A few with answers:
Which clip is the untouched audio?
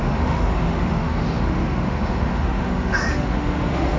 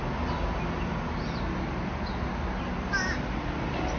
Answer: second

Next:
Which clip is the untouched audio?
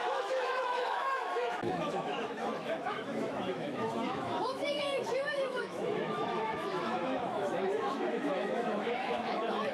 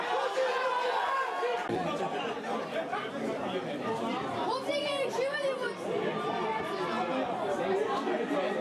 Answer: second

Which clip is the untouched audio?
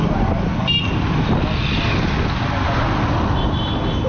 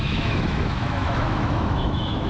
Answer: first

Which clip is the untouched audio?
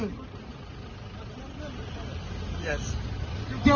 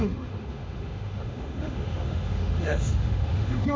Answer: first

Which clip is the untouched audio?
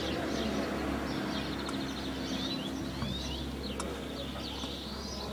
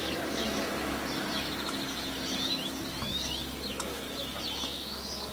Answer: first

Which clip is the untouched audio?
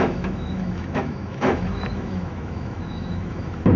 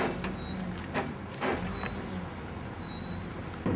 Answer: second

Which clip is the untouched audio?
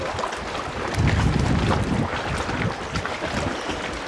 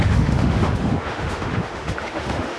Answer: first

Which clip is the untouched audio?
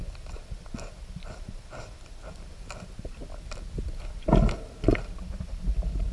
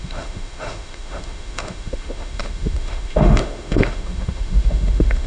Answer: first